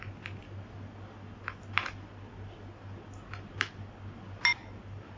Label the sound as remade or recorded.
recorded